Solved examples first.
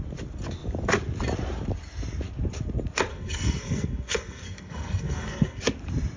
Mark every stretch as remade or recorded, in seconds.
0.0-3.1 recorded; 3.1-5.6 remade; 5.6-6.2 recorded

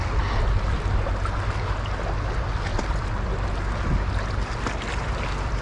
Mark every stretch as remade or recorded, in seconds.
0.0-5.6 recorded

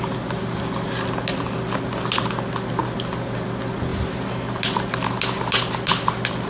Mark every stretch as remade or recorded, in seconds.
0.0-6.5 recorded

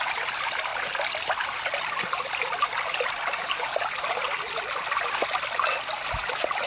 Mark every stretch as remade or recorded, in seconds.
0.0-6.7 recorded

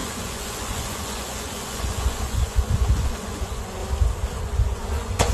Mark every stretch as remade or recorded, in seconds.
0.0-3.8 remade; 3.8-4.4 recorded; 4.4-5.3 remade

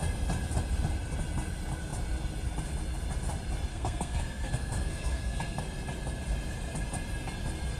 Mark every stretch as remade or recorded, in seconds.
0.0-3.7 recorded; 3.7-5.6 remade; 5.6-7.8 recorded

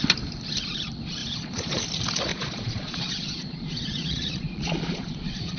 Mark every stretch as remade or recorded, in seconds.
0.0-1.2 recorded; 1.2-1.8 remade; 1.8-2.3 recorded; 2.3-5.6 remade